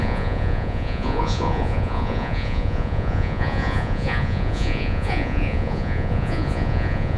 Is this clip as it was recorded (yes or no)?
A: no